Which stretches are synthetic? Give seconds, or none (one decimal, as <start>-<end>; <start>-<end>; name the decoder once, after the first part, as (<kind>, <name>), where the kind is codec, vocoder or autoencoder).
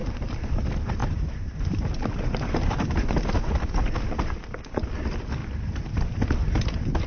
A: 0.0-0.6 (vocoder, BigVGAN v2); 1.0-3.5; 5.4-7.1